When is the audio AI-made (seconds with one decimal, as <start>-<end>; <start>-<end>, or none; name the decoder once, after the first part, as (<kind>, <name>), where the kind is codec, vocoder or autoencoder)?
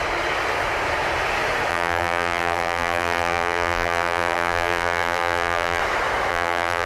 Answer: 1.7-5.8 (vocoder, BigVGAN v2); 6.3-6.9